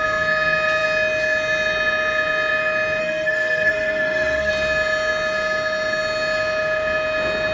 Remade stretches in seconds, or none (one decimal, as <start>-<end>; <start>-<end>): 3.0-4.5